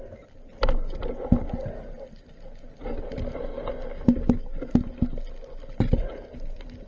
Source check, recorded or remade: recorded